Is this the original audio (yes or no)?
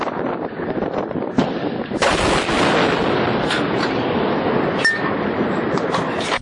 yes